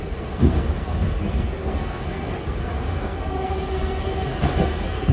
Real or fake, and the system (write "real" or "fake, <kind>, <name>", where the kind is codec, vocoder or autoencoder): fake, codec, SNAC